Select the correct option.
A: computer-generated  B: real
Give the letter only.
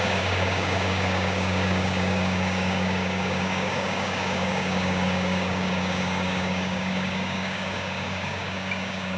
A